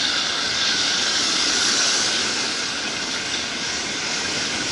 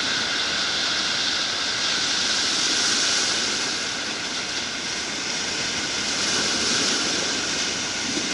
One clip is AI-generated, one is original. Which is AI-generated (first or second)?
first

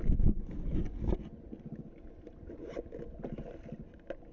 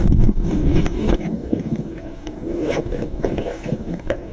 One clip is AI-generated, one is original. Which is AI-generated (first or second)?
second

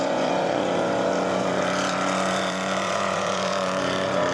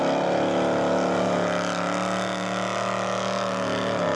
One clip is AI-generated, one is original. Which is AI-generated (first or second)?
first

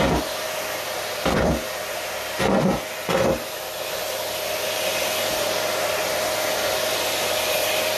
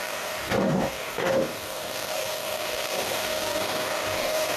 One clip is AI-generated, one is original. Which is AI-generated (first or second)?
second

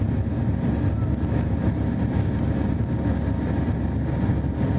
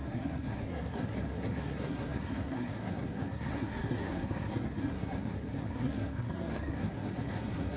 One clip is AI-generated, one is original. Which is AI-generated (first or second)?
second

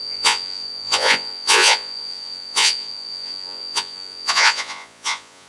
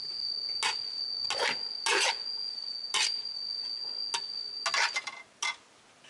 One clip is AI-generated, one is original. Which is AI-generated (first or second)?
first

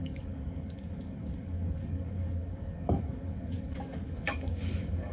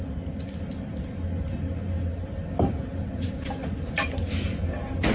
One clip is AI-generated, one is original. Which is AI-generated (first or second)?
first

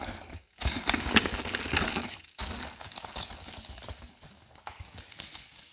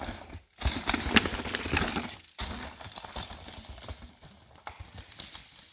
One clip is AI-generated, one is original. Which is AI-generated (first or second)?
first